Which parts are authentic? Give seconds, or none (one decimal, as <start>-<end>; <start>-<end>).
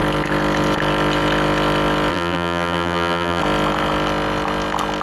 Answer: 0.0-2.1; 3.4-5.0